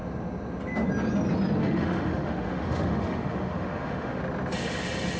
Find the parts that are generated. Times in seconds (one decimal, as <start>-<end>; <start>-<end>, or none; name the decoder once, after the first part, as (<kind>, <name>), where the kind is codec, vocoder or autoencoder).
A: 1.6-4.2 (autoencoder, DAC-VAE)